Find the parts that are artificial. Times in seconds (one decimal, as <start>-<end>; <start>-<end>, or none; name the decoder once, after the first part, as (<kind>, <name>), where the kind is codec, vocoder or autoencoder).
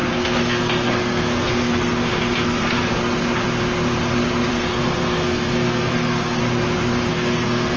0.0-2.9 (codec, SNAC); 4.5-6.4; 7.1-7.8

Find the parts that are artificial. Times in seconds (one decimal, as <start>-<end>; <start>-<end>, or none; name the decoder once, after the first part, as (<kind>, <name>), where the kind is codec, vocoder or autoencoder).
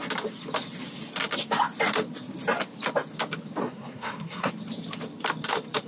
3.6-4.5 (codec, SNAC)